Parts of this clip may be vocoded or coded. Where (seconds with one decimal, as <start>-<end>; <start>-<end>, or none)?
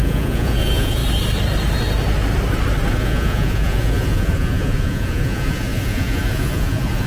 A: 0.0-1.0; 2.9-7.1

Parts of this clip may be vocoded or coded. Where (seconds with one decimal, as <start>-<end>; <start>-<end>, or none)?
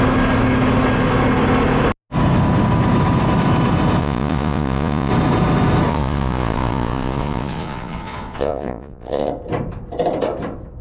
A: 4.0-5.1; 5.9-9.3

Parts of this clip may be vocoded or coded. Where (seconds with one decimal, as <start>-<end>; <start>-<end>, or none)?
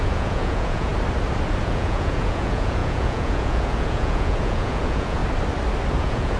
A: 0.0-0.9; 1.6-5.2; 6.0-6.4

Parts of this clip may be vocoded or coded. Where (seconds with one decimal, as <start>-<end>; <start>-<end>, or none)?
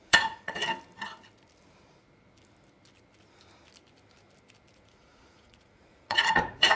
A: 0.0-0.6; 4.7-6.8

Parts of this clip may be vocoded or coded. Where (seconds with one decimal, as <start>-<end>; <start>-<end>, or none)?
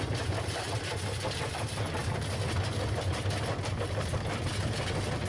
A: none